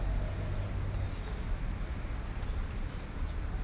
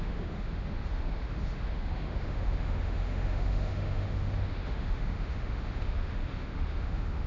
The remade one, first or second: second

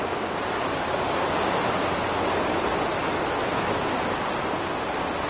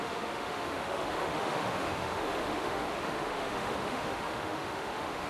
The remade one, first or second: second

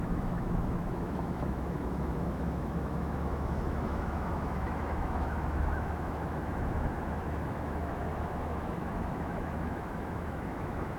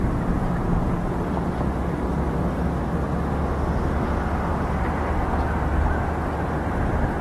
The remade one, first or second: first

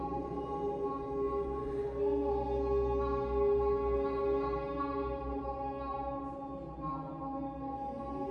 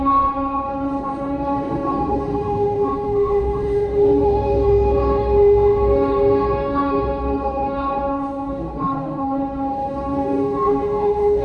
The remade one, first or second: second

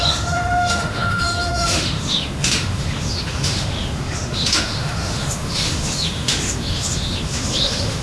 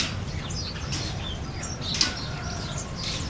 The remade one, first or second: first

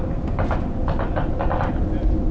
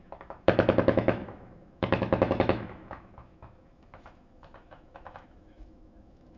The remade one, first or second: second